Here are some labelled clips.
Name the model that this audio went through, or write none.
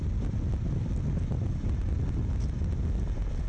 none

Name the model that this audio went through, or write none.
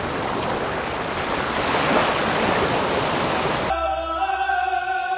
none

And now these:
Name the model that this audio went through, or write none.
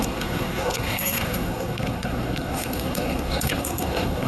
codec, SNAC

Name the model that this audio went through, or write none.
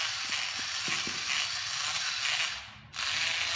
none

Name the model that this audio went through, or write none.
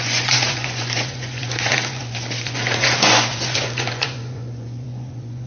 vocoder, Vocos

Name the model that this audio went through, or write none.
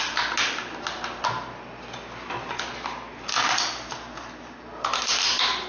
none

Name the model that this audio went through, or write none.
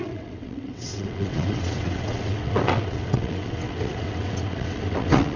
vocoder, WaveNeXt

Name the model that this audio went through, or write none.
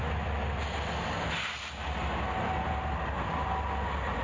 none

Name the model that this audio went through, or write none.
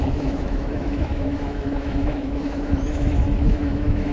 autoencoder, DAC-VAE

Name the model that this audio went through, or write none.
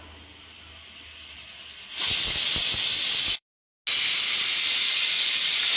none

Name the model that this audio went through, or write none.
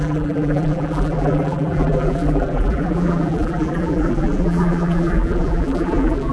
vocoder, BigVGAN v2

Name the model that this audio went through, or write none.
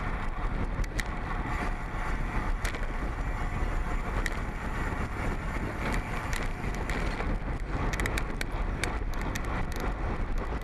none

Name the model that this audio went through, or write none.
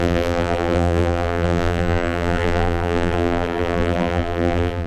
vocoder, BigVGAN v2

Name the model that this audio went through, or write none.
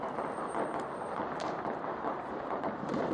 vocoder, BigVGAN v2